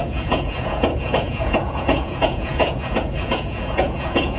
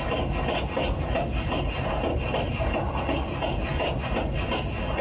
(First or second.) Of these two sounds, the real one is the second